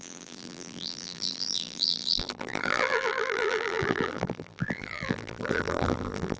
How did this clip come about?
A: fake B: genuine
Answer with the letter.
A